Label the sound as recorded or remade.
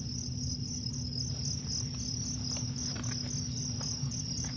recorded